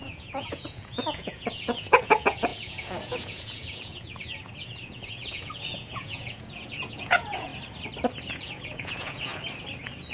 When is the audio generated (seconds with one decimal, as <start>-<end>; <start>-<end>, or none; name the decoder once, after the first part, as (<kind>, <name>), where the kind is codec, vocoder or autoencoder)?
0.0-7.5 (vocoder, Vocos); 8.2-9.3